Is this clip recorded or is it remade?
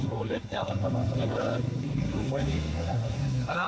remade